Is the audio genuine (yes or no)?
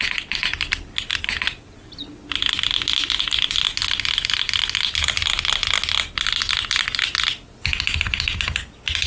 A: yes